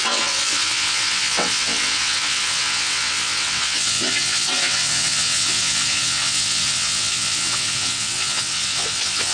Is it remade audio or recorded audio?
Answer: remade